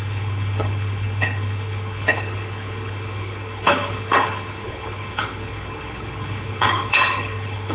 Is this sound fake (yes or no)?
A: yes